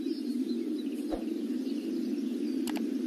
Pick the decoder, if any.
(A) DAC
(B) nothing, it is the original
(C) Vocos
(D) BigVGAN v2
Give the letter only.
B